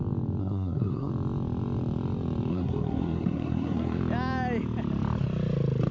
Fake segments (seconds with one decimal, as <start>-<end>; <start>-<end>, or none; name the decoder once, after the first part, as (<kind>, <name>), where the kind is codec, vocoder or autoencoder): 0.4-1.1 (codec, SNAC); 2.5-4.0